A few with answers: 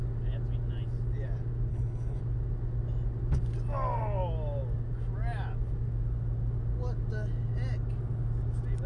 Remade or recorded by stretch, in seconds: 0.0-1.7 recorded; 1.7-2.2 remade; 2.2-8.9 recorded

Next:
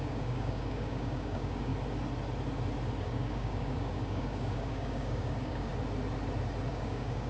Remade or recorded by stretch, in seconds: 0.0-1.7 remade; 1.7-3.0 recorded; 3.0-5.7 remade; 5.7-6.7 recorded; 6.7-7.3 remade

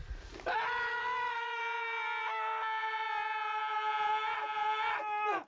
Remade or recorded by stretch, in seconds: 0.0-0.9 recorded; 0.9-1.6 remade; 1.6-5.5 recorded

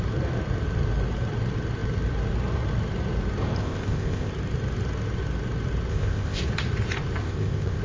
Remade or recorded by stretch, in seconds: 0.0-3.6 recorded; 3.6-4.3 remade; 4.3-5.9 recorded; 5.9-6.4 remade; 6.4-7.2 recorded; 7.2-7.8 remade